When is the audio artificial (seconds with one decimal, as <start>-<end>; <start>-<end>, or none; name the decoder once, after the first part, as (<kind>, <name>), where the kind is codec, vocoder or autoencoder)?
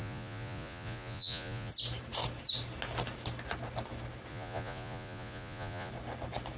0.0-1.7 (vocoder, Vocos); 4.3-5.9